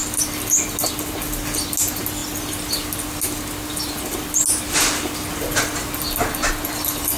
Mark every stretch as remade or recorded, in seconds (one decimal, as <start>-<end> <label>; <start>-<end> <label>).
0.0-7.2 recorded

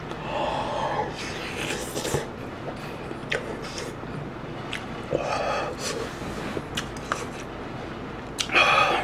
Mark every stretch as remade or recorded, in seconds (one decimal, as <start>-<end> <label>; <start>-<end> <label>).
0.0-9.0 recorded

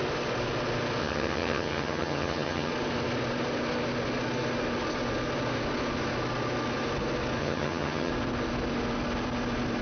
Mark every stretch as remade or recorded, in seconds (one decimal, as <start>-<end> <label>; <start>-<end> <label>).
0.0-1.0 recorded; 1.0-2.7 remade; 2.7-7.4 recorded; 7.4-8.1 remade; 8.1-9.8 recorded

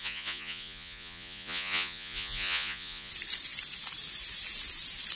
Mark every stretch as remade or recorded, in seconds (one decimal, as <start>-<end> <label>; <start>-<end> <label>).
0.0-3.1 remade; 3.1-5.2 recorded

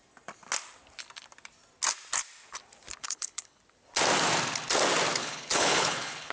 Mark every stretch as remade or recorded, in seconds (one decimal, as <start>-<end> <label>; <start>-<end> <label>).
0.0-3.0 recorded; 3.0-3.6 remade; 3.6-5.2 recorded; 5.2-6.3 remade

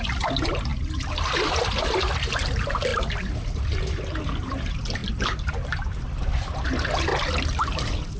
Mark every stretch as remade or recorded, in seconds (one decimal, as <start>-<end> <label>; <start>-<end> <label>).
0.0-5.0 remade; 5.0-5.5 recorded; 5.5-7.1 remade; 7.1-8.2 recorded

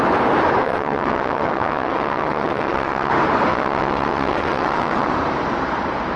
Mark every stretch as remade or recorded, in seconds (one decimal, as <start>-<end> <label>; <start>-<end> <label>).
0.0-0.6 recorded; 0.6-3.1 remade; 3.1-3.5 recorded; 3.5-5.1 remade; 5.1-6.2 recorded

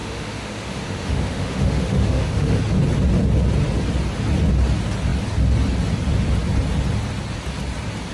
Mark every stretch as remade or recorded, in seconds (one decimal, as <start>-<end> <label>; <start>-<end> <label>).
0.0-2.6 remade; 2.6-8.1 recorded